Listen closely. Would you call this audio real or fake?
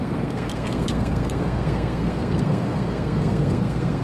fake